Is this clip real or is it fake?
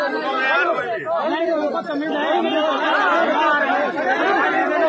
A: real